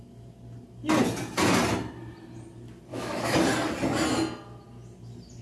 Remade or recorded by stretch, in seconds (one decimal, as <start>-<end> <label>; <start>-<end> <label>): 0.0-2.9 recorded; 2.9-3.4 remade; 3.4-5.4 recorded